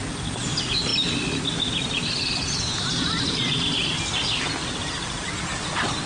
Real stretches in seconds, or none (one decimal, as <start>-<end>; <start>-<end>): 0.0-6.1